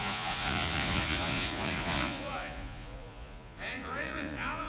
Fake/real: fake